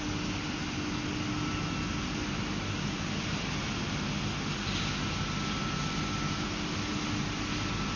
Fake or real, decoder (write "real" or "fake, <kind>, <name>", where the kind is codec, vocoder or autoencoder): real